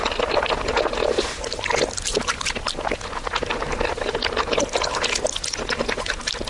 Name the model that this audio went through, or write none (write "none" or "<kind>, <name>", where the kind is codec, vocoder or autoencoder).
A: none